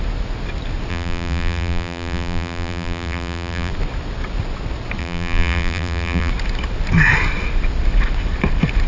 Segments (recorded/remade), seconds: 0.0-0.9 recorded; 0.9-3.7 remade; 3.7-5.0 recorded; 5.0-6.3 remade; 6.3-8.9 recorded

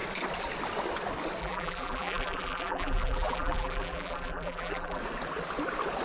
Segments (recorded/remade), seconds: 0.0-1.4 recorded; 1.4-5.0 remade; 5.0-6.0 recorded

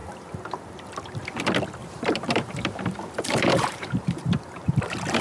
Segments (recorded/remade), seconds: 0.0-1.8 recorded; 1.8-4.8 remade; 4.8-5.2 recorded

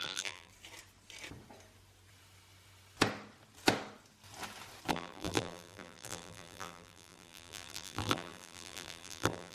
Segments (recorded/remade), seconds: 0.0-0.5 remade; 0.5-4.9 recorded; 4.9-9.5 remade

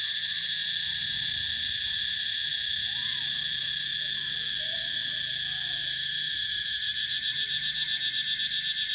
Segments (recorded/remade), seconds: 0.0-2.5 remade; 2.5-3.3 recorded; 3.3-3.9 remade; 3.9-4.5 recorded; 4.5-5.0 remade; 5.0-5.8 recorded; 5.8-8.9 remade

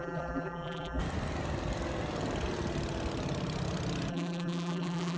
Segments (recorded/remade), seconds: 0.0-1.0 remade; 1.0-4.1 recorded; 4.1-5.2 remade